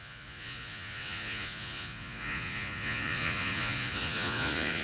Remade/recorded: remade